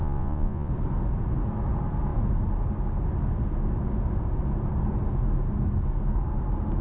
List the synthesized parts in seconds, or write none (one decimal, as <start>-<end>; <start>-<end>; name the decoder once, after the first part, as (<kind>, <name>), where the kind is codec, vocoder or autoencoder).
0.0-0.7 (vocoder, Vocos)